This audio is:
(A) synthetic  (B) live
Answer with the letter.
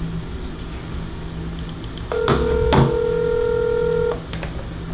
B